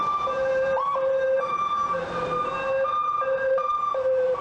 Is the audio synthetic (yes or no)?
yes